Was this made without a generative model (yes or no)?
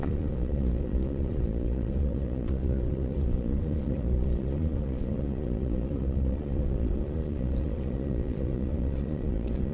no